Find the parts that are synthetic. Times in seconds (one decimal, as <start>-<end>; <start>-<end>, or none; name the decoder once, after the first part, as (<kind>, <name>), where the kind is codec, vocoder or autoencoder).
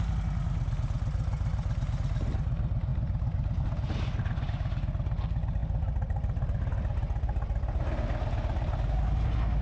none